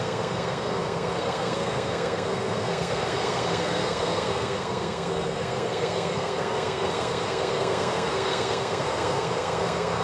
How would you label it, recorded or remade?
remade